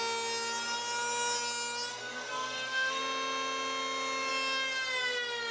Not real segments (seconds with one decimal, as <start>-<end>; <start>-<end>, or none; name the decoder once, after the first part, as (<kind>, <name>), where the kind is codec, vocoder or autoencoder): 1.9-3.0 (codec, SNAC)